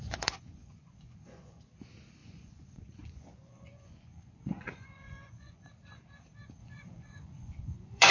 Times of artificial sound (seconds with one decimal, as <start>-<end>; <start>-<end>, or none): 0.0-1.6; 2.2-5.7; 6.6-8.1